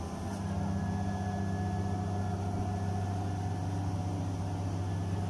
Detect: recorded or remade recorded